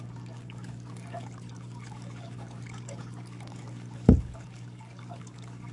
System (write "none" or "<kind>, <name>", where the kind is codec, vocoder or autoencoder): codec, DAC